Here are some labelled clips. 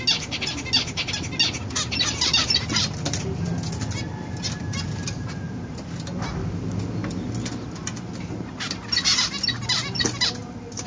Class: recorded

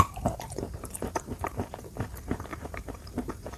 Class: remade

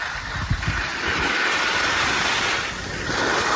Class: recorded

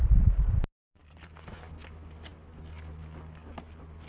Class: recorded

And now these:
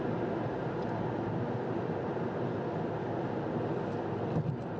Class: recorded